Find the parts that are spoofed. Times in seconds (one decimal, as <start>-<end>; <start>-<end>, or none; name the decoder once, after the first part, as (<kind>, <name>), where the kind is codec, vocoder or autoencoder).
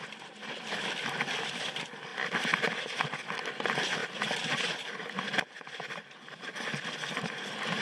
none